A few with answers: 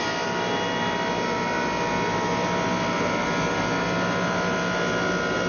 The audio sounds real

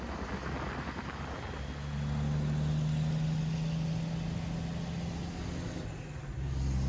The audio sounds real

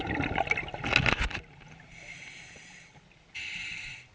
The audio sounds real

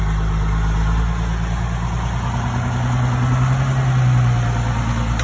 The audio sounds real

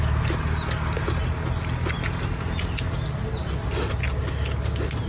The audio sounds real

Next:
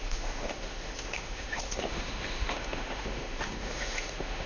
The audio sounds fake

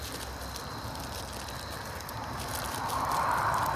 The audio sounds real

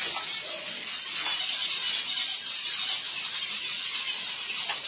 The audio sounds real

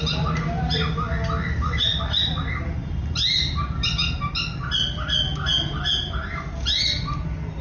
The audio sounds real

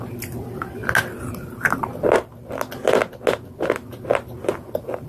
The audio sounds real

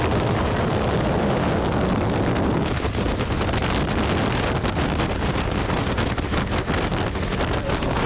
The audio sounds real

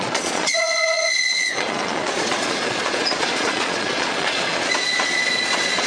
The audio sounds fake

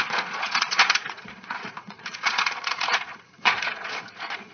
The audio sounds fake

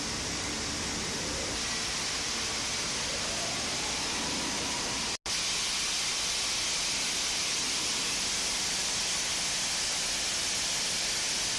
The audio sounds real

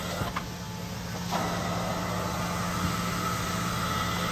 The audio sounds real